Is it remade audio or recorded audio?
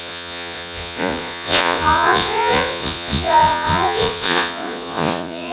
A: remade